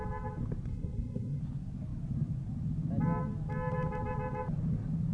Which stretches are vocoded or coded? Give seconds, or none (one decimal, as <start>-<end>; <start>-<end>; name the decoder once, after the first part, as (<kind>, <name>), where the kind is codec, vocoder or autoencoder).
0.7-1.4 (codec, SNAC)